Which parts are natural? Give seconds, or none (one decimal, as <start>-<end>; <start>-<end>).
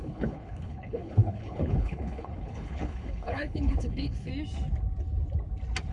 4.3-5.9